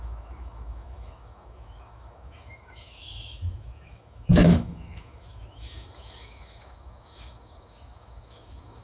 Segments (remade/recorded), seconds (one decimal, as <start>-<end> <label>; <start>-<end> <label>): 0.0-8.8 remade